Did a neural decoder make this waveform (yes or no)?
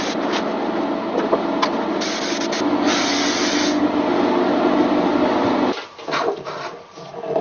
no